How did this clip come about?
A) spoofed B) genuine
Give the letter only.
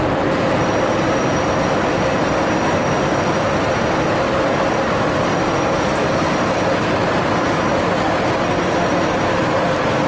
B